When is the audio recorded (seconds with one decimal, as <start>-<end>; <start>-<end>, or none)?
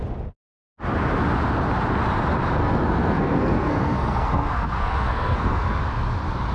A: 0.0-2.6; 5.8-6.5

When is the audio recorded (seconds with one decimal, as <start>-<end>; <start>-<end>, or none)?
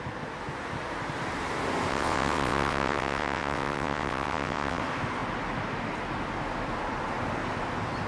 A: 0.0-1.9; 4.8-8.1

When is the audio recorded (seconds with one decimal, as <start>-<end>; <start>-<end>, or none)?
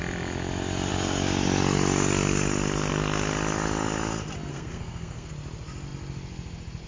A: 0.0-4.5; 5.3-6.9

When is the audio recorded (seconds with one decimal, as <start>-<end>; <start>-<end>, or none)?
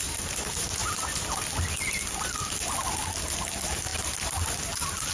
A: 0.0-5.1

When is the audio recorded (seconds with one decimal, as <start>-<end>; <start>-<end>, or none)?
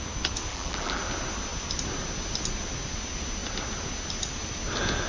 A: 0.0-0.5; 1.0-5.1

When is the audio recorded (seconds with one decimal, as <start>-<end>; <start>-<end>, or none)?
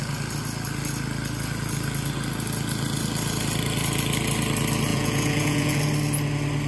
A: 0.0-4.9; 5.8-6.7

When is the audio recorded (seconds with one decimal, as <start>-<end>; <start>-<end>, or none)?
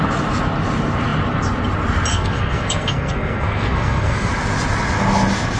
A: 0.0-2.1; 4.3-5.6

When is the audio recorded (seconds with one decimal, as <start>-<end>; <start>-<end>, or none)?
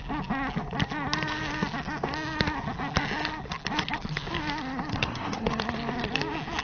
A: 0.0-4.9; 5.5-6.6